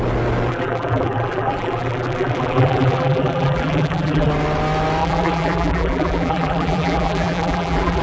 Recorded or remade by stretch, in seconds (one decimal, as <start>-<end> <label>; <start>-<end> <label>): 0.0-0.5 recorded; 0.5-4.3 remade; 4.3-5.0 recorded; 5.0-8.0 remade